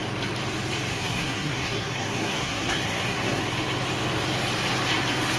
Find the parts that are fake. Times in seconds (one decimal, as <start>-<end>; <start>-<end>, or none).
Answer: 0.9-3.4